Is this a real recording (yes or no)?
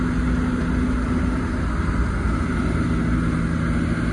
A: yes